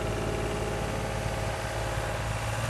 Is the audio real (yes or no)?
yes